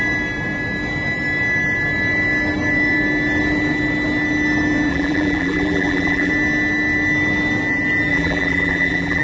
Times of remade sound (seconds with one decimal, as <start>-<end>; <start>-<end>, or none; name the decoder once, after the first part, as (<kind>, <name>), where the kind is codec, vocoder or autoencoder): 4.9-6.3 (vocoder, BigVGAN v2); 8.1-9.2